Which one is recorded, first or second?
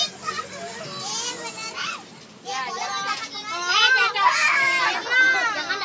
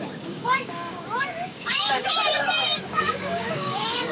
first